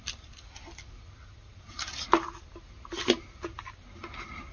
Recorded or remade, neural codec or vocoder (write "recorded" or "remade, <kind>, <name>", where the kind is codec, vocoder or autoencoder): recorded